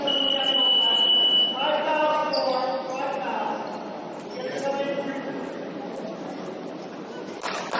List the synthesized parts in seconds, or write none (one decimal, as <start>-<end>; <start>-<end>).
none